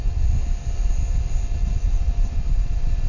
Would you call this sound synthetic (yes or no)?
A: no